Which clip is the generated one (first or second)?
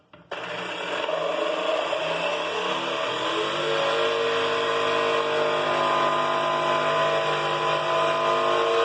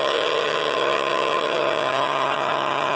second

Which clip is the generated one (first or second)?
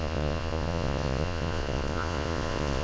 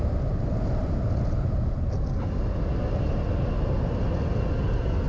first